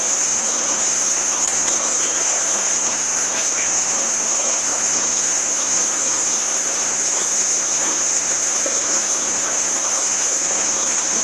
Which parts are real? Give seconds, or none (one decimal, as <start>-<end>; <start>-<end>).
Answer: none